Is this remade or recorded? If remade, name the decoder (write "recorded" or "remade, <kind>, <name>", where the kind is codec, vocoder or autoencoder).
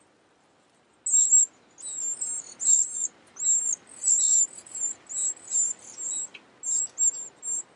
recorded